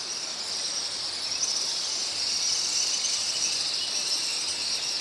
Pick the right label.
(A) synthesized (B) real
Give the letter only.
B